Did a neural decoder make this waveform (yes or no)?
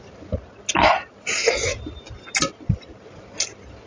no